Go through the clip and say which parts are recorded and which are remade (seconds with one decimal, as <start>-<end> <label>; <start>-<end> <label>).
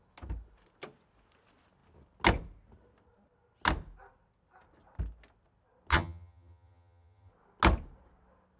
0.0-5.9 recorded; 5.9-7.3 remade; 7.3-8.6 recorded